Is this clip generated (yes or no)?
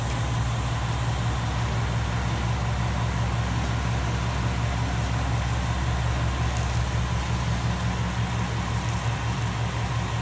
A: no